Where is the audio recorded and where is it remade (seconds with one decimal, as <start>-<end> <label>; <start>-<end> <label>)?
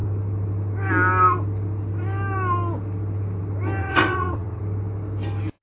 0.0-3.8 recorded; 3.8-4.6 remade; 4.6-5.6 recorded